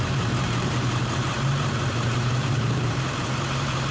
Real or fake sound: fake